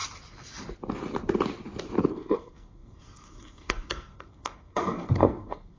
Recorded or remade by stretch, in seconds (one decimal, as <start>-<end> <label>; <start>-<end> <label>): 0.0-2.1 recorded; 2.1-5.8 remade